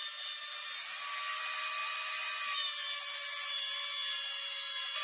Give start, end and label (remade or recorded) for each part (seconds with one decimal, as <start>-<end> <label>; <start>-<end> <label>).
0.0-5.0 recorded